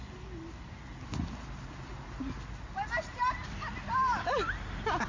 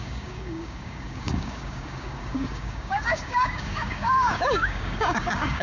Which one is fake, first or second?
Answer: second